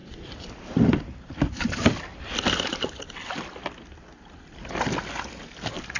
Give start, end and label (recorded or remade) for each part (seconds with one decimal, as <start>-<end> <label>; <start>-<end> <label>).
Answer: 0.0-1.3 remade; 1.3-2.1 recorded; 2.1-3.0 remade; 3.0-6.0 recorded